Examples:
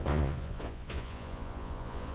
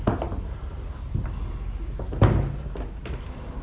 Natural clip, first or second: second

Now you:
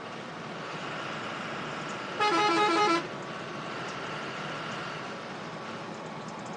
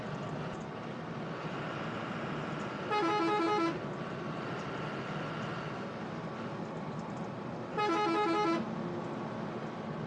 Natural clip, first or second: second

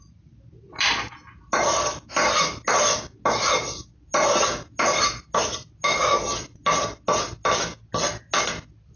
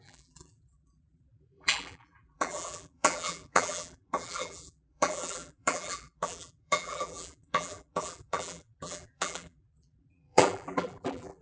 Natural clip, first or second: first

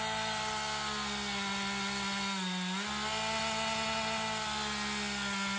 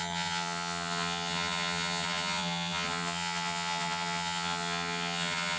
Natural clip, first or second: first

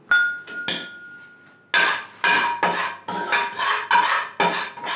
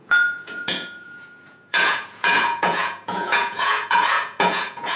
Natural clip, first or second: first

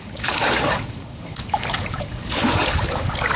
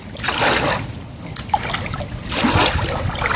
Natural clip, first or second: second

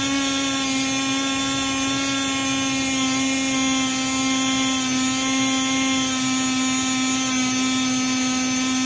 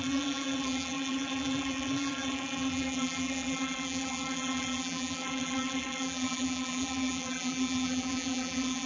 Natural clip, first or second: first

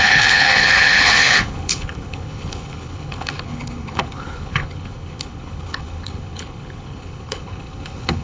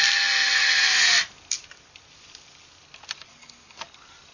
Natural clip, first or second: second